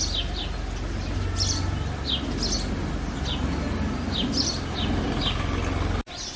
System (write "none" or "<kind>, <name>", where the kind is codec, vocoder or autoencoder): none